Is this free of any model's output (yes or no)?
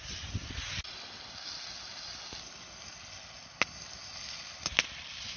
yes